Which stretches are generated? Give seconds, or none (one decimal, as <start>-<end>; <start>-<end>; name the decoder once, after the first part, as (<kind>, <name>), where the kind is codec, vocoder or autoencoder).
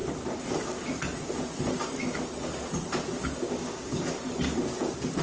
3.2-4.0 (codec, DAC)